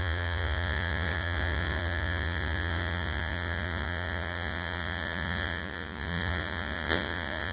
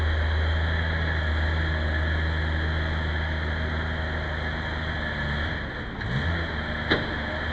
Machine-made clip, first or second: first